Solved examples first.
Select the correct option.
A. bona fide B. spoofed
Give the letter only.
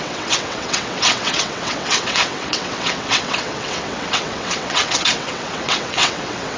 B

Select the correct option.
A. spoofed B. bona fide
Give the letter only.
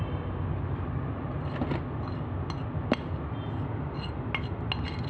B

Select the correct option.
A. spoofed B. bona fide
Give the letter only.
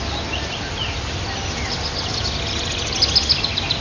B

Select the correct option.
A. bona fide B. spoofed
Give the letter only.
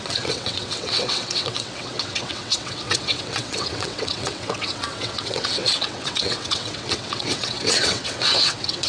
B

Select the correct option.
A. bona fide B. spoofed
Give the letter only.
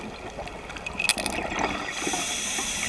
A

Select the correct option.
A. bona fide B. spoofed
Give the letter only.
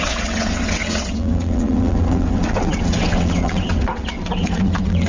B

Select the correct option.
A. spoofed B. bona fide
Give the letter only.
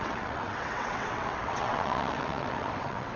A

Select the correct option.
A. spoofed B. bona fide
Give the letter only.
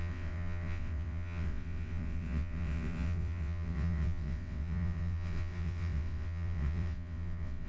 A